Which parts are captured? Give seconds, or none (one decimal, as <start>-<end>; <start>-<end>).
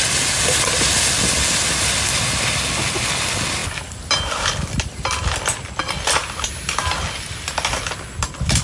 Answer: 0.0-8.6